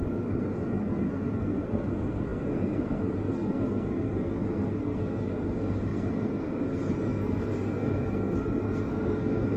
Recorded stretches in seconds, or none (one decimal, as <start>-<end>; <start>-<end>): none